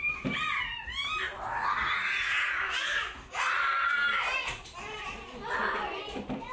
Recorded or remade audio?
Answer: recorded